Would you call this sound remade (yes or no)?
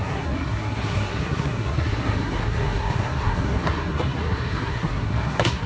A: yes